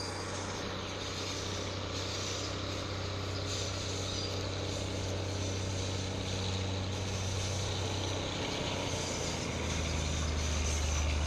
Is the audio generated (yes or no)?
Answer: no